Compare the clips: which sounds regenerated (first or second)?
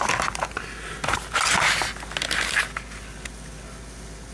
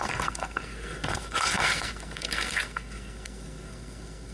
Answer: second